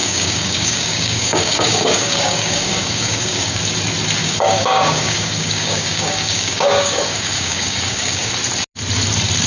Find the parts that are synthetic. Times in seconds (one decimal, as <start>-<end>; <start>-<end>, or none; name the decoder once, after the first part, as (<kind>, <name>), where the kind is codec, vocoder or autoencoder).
0.0-3.6 (codec, DAC); 4.2-8.3